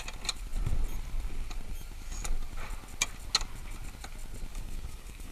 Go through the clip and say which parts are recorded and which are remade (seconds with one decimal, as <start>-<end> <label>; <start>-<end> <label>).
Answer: 0.0-4.5 recorded; 4.5-5.3 remade